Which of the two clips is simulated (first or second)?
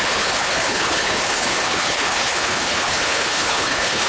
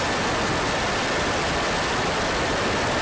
first